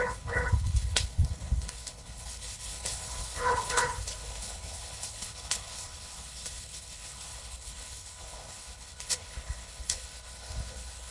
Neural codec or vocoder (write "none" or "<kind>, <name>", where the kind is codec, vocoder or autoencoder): codec, HILCodec